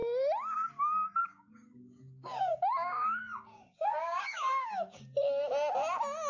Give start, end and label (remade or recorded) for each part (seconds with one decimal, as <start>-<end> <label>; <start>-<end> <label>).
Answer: 0.0-1.2 recorded; 1.2-5.0 remade; 5.0-6.3 recorded